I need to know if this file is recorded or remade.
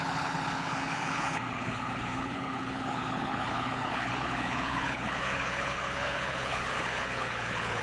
remade